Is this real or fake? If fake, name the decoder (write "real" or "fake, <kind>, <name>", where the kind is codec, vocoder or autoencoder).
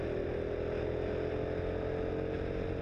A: real